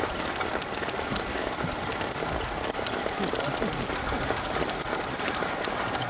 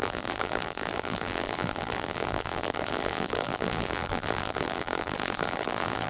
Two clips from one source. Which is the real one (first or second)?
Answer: first